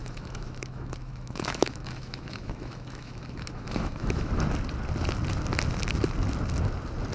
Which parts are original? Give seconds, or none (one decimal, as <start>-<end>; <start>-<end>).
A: 4.3-7.1